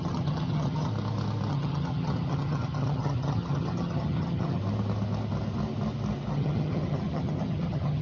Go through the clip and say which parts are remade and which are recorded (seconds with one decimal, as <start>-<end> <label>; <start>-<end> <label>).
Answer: 0.0-0.9 remade; 0.9-1.5 recorded; 1.5-4.6 remade; 4.6-6.3 recorded; 6.3-8.0 remade